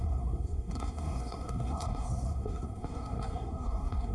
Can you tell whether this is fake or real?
fake